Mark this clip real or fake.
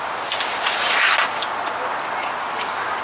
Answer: real